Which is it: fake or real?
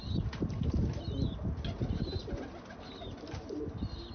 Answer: real